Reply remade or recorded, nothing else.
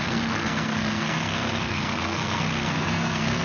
remade